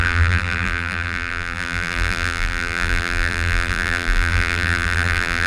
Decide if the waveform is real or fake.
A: fake